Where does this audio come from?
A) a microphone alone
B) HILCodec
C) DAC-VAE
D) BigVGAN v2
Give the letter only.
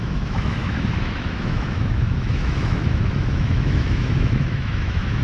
C